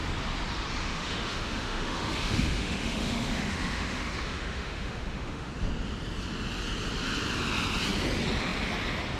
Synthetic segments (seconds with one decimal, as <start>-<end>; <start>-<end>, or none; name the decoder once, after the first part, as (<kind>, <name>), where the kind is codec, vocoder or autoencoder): 0.8-5.5 (autoencoder, DAC-VAE)